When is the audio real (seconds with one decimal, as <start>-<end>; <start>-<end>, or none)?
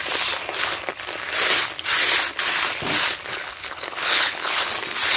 0.0-3.3; 4.7-5.2